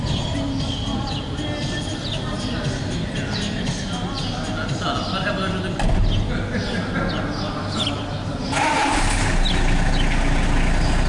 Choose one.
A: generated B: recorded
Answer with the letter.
B